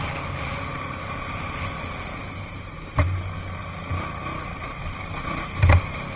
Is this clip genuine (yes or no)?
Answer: yes